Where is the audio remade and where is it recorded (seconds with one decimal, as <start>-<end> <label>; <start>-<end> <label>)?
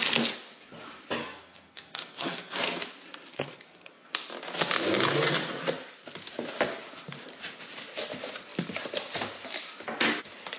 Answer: 0.0-1.2 recorded; 1.2-2.9 remade; 2.9-3.3 recorded; 3.3-4.1 remade; 4.1-10.6 recorded